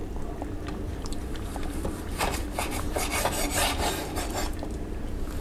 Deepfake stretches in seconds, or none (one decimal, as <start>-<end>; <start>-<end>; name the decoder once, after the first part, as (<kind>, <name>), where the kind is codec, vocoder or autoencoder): 0.7-5.4 (vocoder, BigVGAN v2)